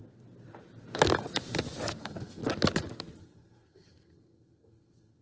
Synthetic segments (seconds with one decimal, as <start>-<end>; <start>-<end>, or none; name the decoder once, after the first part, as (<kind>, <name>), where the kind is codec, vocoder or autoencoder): 2.0-2.4 (codec, SNAC); 3.2-5.2

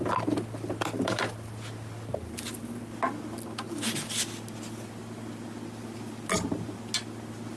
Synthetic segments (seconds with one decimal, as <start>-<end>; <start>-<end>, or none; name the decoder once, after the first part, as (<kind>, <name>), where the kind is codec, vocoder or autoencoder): none

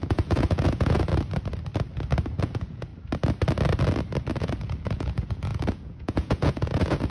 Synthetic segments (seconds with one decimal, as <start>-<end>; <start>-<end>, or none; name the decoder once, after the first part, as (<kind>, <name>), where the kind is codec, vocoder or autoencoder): 0.0-1.1 (vocoder, Vocos); 2.4-2.9; 4.4-7.1